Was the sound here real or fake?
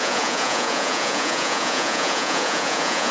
fake